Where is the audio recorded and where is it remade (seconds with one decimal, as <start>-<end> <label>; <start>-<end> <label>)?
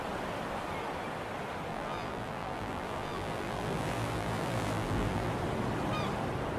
0.0-1.7 recorded; 1.7-5.3 remade; 5.3-6.6 recorded